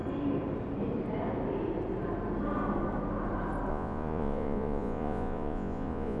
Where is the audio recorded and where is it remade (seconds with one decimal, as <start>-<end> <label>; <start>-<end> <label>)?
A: 0.0-3.7 recorded; 3.7-6.2 remade